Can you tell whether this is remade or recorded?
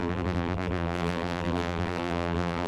remade